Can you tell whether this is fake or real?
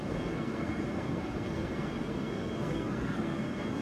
fake